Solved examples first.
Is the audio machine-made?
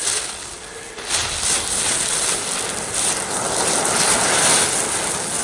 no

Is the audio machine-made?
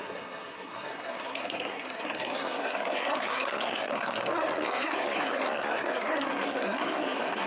yes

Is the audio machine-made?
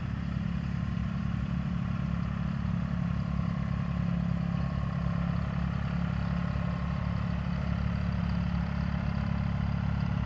no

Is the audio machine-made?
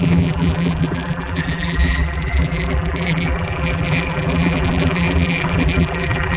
yes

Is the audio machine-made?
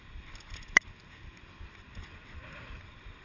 no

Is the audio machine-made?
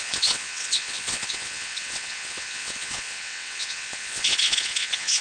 yes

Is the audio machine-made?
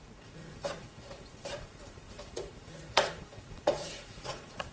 yes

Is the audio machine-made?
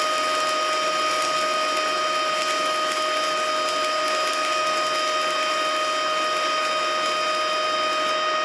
no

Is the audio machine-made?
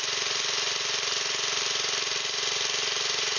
no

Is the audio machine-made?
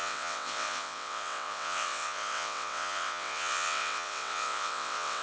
yes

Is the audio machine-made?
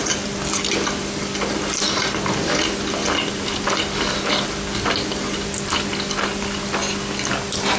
no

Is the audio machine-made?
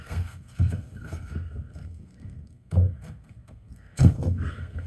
yes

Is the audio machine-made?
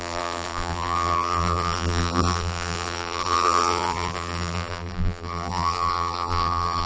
yes